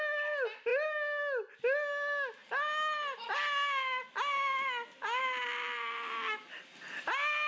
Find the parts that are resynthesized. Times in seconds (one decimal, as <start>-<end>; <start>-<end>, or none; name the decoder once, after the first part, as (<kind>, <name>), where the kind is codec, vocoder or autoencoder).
none